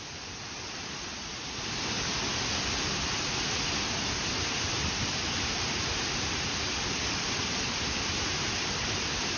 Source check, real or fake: real